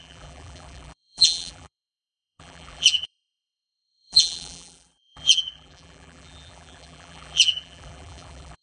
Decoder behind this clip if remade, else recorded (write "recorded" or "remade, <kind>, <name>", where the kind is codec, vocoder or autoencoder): remade, vocoder, BigVGAN v2